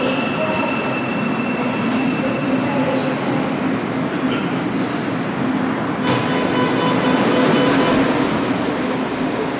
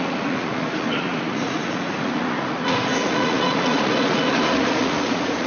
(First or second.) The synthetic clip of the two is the second